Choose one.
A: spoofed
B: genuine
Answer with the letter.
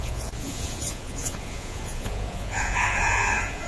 A